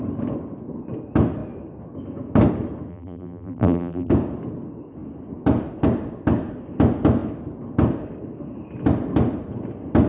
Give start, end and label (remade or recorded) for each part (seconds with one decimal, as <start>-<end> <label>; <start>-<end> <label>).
0.0-2.9 recorded; 2.9-4.1 remade; 4.1-10.1 recorded